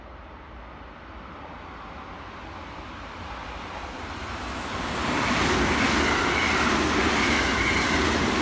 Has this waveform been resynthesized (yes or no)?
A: no